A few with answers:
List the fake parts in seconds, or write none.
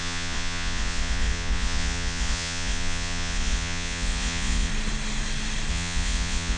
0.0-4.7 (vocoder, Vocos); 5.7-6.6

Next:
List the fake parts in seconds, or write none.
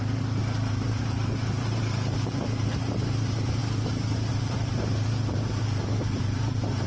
0.0-3.6 (vocoder, BigVGAN v2); 4.3-6.9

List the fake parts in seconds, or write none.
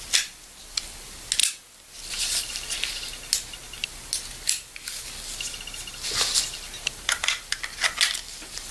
none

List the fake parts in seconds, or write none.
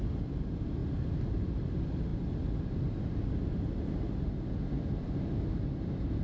none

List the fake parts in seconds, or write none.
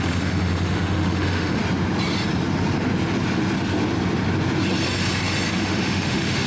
0.0-1.6 (autoencoder, DAC-VAE); 5.5-6.5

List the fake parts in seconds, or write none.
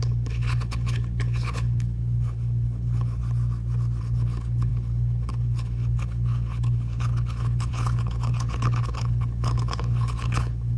0.0-3.2 (codec, HILCodec); 4.0-10.8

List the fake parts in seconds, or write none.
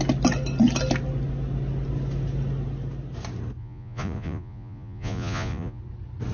3.6-5.8 (vocoder, Vocos)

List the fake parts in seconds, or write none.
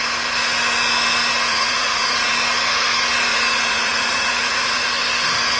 1.5-2.3 (vocoder, Vocos); 3.3-4.9